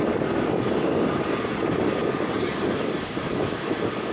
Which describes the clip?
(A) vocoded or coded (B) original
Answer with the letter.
B